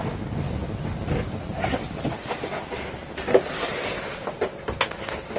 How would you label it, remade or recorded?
recorded